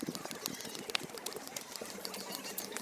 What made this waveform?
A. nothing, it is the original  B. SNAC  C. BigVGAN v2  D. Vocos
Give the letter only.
A